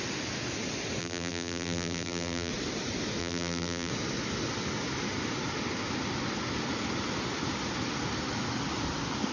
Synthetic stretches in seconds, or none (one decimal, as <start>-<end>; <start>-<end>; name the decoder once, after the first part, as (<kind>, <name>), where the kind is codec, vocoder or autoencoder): 1.0-2.5 (vocoder, BigVGAN v2); 3.2-3.9